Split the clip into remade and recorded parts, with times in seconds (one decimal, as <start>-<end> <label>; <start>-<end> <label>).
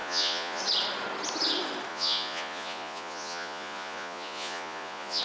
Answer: 0.0-0.6 remade; 0.6-1.9 recorded; 1.9-5.2 remade